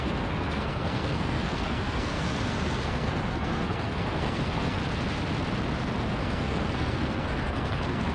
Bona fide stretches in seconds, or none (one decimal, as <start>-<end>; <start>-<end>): 4.8-6.1